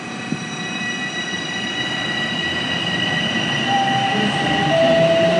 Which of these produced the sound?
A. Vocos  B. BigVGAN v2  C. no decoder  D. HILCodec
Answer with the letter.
B